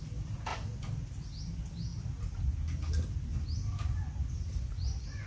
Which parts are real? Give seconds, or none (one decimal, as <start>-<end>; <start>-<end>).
0.0-5.3